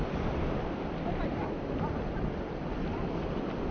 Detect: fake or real real